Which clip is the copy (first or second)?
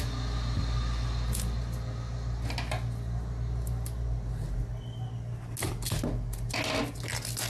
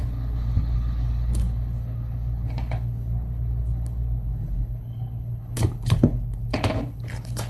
second